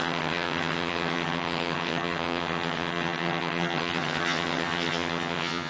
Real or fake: fake